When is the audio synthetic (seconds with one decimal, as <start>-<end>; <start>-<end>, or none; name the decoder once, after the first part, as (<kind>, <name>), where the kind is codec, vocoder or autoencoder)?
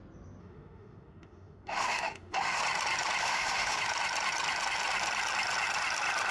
0.4-2.6 (autoencoder, DAC-VAE); 3.2-3.8